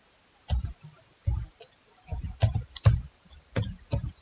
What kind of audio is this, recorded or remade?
recorded